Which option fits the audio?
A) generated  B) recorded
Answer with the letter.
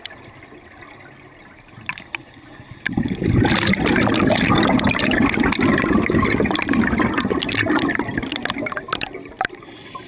B